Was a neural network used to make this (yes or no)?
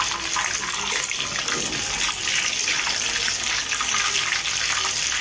no